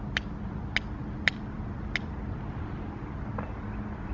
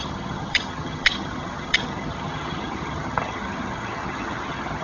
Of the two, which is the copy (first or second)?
second